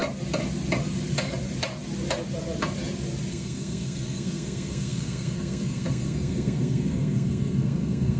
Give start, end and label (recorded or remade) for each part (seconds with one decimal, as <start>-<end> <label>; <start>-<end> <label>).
0.0-3.3 recorded; 3.3-8.2 remade

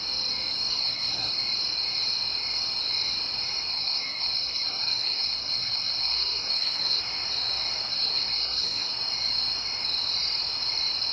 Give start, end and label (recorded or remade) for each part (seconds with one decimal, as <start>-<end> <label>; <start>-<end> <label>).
0.0-0.7 recorded; 0.7-1.3 remade; 1.3-3.7 recorded; 3.7-7.0 remade; 7.0-7.9 recorded; 7.9-8.9 remade; 8.9-11.1 recorded